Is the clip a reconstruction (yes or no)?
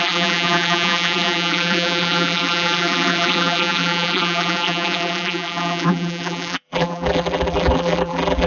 yes